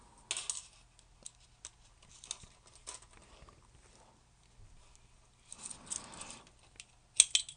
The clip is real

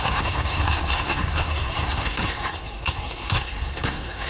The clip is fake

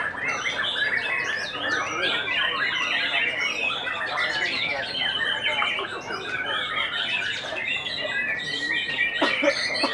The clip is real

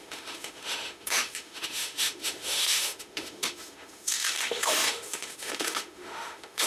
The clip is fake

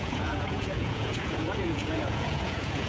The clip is fake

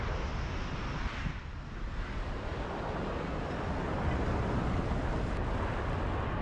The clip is real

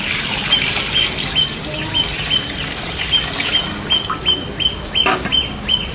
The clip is real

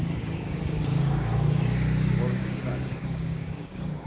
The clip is fake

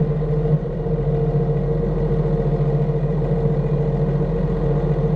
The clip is real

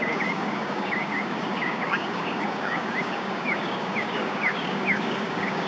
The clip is fake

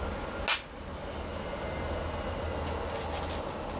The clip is real